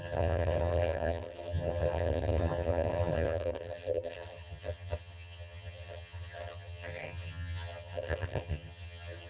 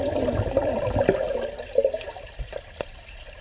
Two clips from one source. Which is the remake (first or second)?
first